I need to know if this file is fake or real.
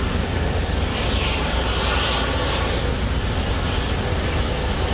real